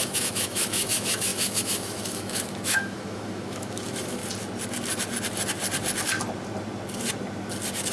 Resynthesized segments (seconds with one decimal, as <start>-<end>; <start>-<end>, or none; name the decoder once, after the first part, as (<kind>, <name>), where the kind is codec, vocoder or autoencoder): 0.0-4.2 (autoencoder, DAC-VAE)

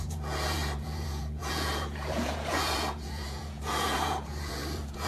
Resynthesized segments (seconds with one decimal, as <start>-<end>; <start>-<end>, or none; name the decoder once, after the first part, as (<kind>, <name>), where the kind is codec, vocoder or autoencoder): 0.0-5.1 (vocoder, Vocos)

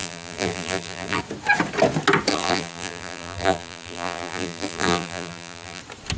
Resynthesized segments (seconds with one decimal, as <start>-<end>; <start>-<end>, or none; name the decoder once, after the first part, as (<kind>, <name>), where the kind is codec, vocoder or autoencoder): 0.0-1.2 (vocoder, BigVGAN v2); 2.3-5.8

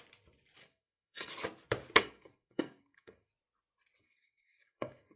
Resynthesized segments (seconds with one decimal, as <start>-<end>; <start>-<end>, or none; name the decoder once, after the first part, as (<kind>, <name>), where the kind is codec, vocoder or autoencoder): 0.6-1.3 (codec, SNAC); 2.0-3.3; 4.0-5.2